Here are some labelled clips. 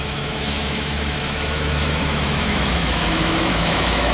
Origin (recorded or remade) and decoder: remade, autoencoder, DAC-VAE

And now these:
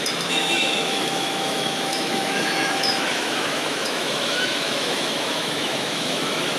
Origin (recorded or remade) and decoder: remade, autoencoder, DAC-VAE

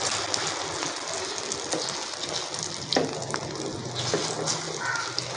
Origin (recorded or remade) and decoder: recorded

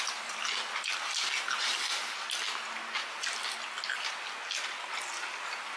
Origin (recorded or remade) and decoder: recorded